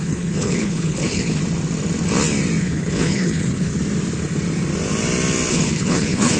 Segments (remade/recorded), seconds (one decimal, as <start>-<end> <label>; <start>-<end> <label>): 0.0-1.4 remade; 1.4-2.6 recorded; 2.6-3.7 remade; 3.7-5.5 recorded; 5.5-6.4 remade